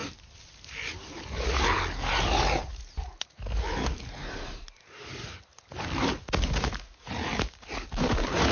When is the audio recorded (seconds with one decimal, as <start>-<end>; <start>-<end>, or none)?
0.0-8.5